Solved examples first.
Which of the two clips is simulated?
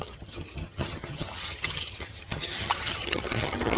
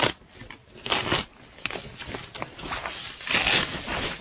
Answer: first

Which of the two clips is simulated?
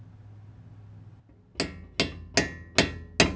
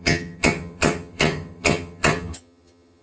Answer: second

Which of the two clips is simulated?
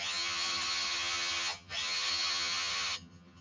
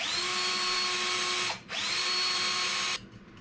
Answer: first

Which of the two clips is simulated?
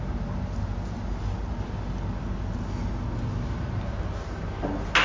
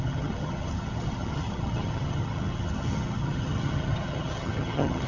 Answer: second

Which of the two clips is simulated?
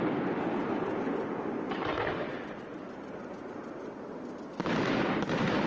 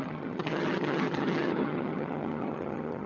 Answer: second